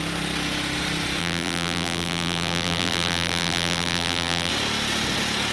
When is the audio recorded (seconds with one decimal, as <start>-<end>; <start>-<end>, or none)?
0.0-1.2; 4.5-5.5